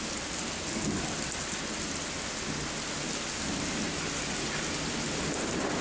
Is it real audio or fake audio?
real